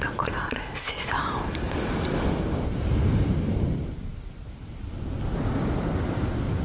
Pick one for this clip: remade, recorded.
recorded